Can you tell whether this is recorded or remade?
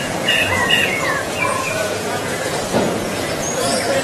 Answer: remade